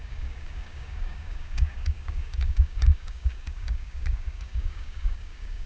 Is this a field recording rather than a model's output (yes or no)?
no